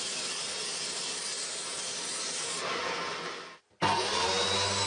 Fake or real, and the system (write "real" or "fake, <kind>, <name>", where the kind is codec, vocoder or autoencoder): real